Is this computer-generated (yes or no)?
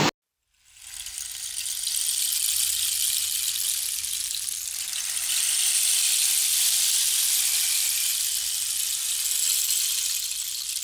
no